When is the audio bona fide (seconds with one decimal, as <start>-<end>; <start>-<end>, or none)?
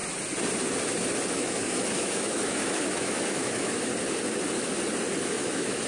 0.0-1.3; 3.9-5.2